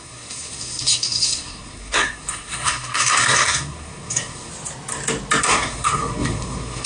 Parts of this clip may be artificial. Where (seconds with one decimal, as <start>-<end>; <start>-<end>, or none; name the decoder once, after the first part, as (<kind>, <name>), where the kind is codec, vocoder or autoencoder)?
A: 0.0-4.5 (codec, SNAC); 5.4-6.9